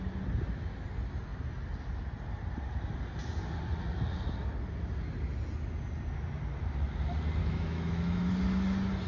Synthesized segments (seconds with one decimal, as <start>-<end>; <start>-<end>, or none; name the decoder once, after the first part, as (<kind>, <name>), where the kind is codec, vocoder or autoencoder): 7.4-8.3 (autoencoder, DAC-VAE)